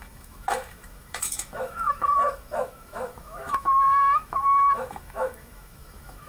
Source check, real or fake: fake